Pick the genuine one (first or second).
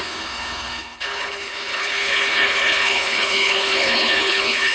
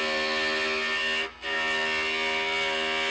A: second